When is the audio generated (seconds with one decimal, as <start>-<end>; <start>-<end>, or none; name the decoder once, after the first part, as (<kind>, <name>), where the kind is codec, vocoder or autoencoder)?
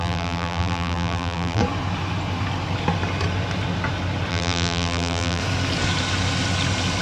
0.0-1.6 (vocoder, BigVGAN v2); 4.3-5.4